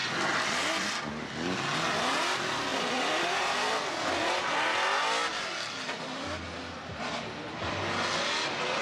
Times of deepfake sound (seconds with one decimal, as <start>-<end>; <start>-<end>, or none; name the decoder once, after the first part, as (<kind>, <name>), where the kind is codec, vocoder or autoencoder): 0.0-1.1 (vocoder, BigVGAN v2); 2.7-5.0